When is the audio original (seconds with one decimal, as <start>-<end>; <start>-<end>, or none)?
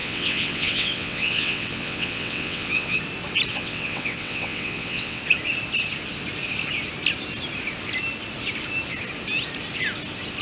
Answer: 3.0-3.5; 5.2-10.4